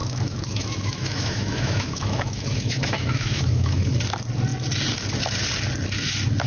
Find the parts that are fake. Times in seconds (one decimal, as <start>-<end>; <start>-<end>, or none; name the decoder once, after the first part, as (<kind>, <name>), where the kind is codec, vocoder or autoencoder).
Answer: 0.0-3.9 (autoencoder, DAC-VAE)